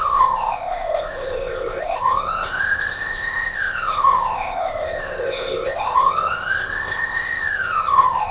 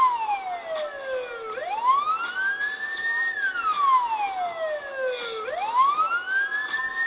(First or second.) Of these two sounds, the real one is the second